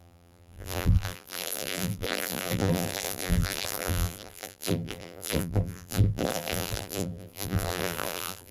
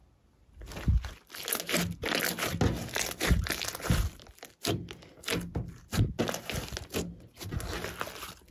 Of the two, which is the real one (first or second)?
second